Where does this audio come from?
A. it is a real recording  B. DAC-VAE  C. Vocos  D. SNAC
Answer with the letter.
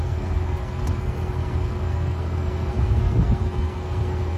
D